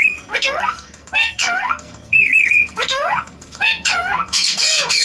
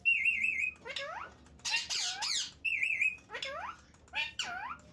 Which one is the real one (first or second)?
second